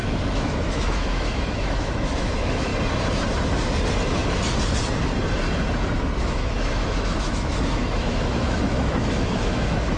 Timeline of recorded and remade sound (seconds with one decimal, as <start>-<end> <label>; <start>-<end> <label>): 0.0-2.7 remade; 2.7-6.2 recorded; 6.2-10.0 remade